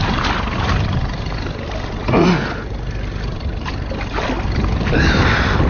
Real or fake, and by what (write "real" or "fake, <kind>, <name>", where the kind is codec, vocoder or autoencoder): real